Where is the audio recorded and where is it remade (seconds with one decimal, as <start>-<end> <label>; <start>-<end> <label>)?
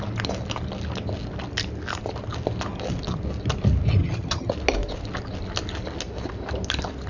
0.0-4.0 recorded; 4.0-4.5 remade; 4.5-7.1 recorded